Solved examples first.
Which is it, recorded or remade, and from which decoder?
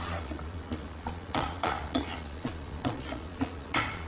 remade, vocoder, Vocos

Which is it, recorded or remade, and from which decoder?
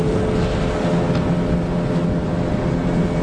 recorded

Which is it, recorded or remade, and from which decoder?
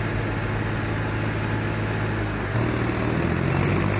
recorded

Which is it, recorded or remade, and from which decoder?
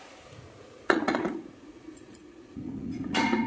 remade, vocoder, Vocos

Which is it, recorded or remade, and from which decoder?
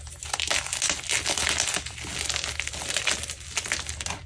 recorded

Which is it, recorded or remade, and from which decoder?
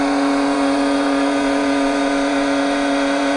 remade, vocoder, Vocos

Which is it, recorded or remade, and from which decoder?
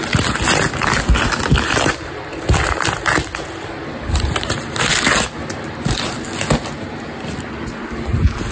recorded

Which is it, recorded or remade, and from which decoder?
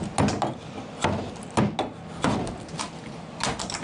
recorded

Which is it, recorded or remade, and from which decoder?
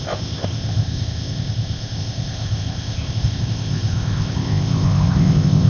remade, codec, ZipCodec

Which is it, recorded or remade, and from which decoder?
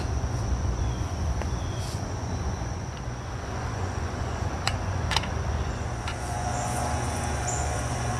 remade, vocoder, Vocos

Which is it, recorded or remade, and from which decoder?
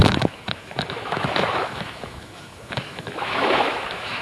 remade, autoencoder, DAC-VAE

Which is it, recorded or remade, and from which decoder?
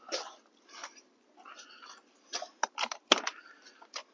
recorded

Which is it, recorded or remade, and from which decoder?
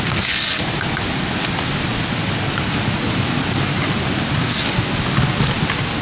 recorded